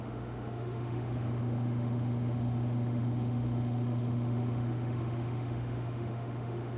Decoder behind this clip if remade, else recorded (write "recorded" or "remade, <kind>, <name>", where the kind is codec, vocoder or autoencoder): remade, autoencoder, DAC-VAE